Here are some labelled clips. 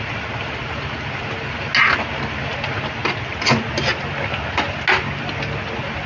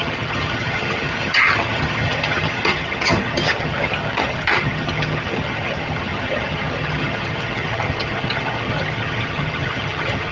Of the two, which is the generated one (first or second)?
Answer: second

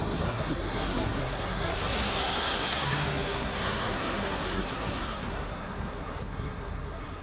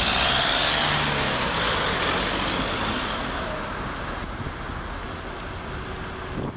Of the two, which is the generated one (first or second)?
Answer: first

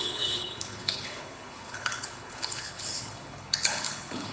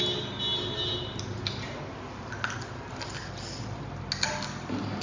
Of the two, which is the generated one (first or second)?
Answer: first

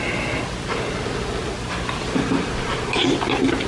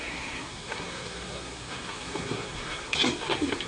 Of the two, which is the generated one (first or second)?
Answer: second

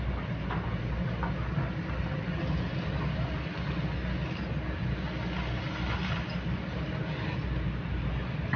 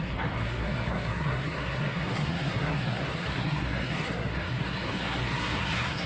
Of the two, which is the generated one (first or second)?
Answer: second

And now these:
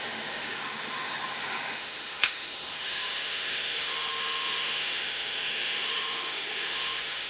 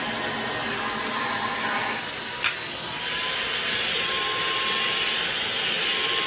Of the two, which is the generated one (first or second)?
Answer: first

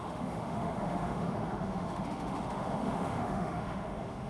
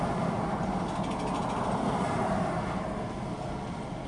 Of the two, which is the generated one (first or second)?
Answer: first